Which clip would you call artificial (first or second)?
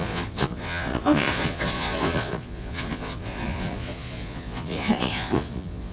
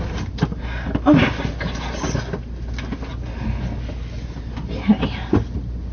first